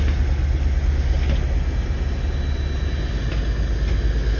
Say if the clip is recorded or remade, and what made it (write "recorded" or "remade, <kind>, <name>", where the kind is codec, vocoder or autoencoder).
recorded